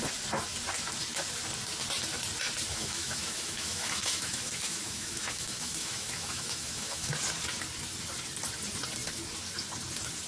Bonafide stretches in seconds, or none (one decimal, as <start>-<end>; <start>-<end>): 0.0-2.7; 7.1-10.3

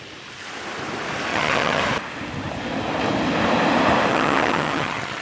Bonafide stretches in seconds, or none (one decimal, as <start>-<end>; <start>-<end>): 0.0-1.3; 1.8-4.1

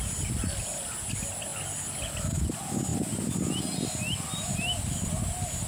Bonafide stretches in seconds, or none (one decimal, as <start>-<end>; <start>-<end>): 0.0-1.5; 2.5-5.7

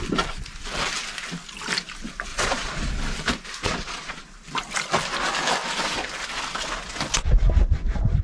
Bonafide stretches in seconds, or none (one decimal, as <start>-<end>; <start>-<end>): 0.0-2.3; 2.9-3.6; 4.2-8.2